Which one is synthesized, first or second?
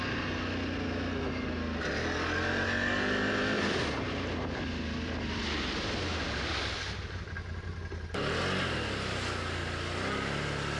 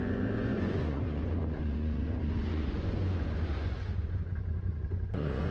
second